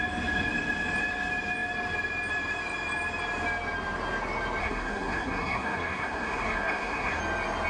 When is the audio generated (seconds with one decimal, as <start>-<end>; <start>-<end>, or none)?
4.6-7.2

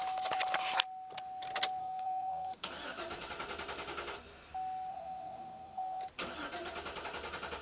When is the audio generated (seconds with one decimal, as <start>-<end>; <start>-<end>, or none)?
1.8-2.7; 4.9-6.0

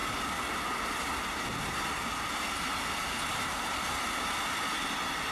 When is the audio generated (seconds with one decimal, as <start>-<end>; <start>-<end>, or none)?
none

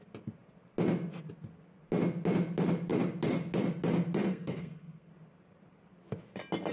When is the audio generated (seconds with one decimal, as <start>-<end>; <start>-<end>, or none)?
4.3-5.1

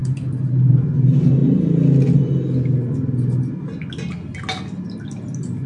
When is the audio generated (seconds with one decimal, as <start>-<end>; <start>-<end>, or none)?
none

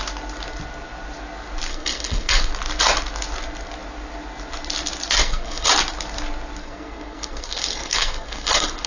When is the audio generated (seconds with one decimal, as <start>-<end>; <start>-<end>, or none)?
1.7-2.5; 5.2-5.7; 6.6-8.9

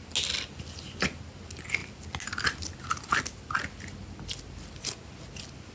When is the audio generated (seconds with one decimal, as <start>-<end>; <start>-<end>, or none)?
none